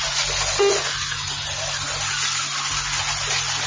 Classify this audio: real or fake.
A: real